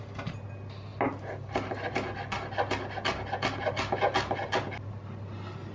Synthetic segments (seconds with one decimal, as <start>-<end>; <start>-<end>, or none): none